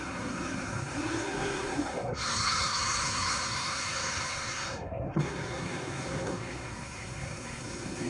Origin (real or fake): fake